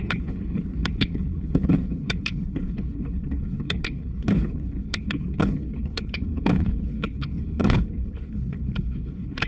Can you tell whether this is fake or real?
fake